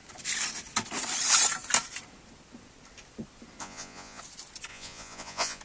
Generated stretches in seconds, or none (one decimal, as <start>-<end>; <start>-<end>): 3.6-4.2; 4.7-5.6